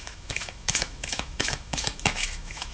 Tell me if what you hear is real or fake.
fake